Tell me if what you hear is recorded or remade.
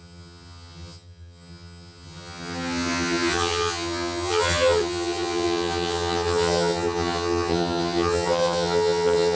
remade